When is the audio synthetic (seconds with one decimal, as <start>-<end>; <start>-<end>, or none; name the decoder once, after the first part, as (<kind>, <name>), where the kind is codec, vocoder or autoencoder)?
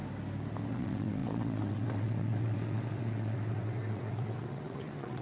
0.7-5.2 (vocoder, WaveNeXt)